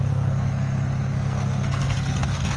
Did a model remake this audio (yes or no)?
yes